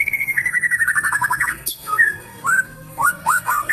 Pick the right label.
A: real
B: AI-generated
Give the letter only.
B